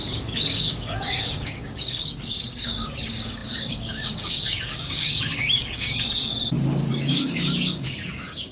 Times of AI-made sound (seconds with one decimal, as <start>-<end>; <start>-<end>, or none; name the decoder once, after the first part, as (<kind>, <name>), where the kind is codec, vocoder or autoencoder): 0.0-6.3 (codec, DAC); 6.9-8.5